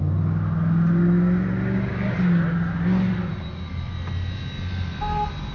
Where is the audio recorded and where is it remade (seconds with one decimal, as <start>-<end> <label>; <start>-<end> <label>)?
0.0-5.5 recorded